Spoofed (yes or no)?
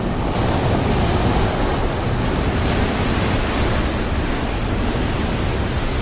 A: no